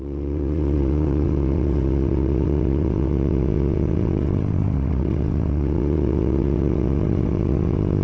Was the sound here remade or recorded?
remade